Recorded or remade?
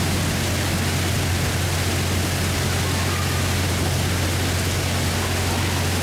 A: recorded